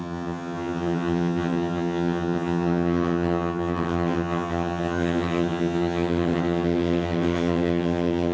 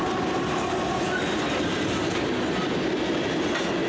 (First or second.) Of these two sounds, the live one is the second